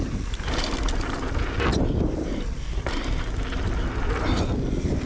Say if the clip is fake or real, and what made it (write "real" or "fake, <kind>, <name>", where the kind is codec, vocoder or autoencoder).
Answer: real